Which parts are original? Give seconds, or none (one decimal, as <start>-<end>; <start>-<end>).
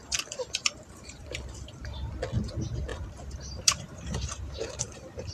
2.1-2.9